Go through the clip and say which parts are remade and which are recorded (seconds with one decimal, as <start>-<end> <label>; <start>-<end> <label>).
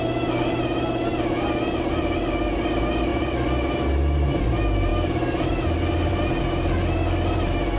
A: 0.0-3.1 recorded; 3.1-3.7 remade; 3.7-4.9 recorded; 4.9-6.4 remade; 6.4-7.8 recorded